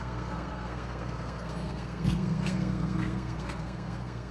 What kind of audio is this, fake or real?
fake